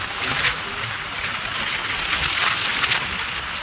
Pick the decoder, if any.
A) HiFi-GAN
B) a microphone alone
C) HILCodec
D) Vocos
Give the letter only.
B